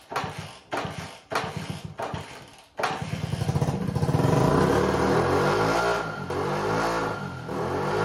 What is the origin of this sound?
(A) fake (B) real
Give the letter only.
B